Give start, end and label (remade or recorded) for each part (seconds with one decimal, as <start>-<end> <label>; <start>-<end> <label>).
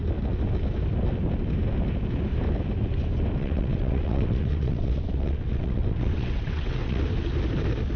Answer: 0.0-3.4 recorded; 3.4-7.0 remade; 7.0-8.0 recorded